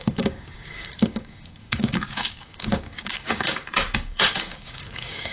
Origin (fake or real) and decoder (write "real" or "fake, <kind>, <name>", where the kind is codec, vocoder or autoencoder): fake, codec, DAC